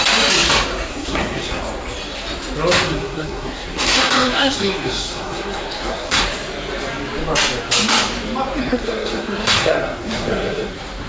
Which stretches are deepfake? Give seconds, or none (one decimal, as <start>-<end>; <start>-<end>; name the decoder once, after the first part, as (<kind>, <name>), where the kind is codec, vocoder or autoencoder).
0.9-1.6 (codec, SNAC); 2.9-6.2; 8.6-10.7